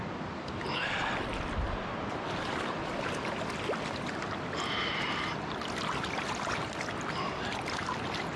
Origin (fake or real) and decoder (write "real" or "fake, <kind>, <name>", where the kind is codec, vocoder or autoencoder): real